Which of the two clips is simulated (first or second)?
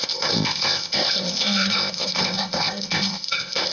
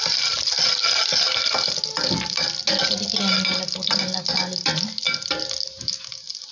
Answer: first